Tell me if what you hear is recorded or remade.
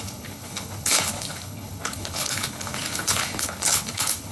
remade